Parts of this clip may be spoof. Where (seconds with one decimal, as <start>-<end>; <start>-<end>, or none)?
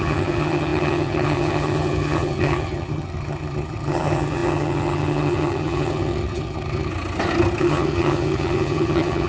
0.0-6.9; 7.6-9.3